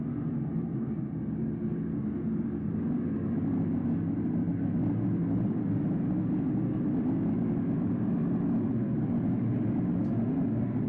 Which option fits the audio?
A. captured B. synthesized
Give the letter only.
A